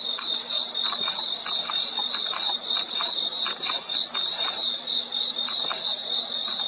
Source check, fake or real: real